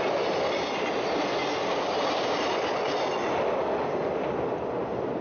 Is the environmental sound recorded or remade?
recorded